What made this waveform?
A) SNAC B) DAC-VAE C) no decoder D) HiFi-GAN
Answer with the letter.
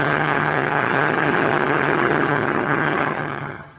D